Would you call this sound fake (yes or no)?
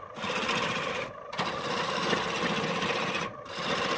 no